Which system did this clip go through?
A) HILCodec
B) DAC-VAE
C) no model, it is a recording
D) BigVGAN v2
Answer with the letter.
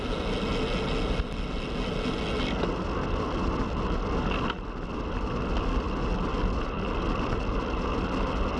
C